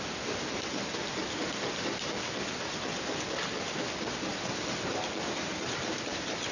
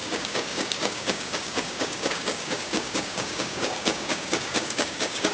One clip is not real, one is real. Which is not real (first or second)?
second